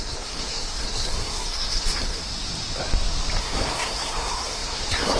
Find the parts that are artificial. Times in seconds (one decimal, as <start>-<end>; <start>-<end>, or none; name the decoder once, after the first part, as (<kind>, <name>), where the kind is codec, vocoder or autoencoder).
0.0-2.2 (codec, SNAC); 3.4-5.2